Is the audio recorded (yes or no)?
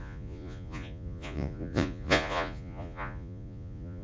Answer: no